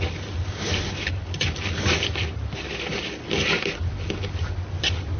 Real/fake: real